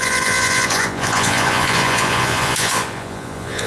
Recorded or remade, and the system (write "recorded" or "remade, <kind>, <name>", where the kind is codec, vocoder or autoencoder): remade, vocoder, Vocos